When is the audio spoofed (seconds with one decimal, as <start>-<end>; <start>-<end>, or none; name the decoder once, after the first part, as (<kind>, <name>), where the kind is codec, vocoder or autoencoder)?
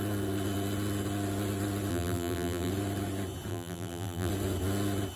1.9-2.7 (vocoder, BigVGAN v2); 3.5-4.3